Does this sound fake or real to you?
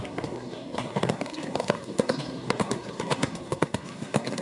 fake